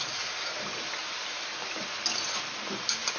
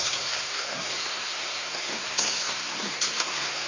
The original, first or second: first